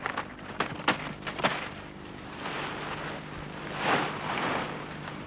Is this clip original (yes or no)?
yes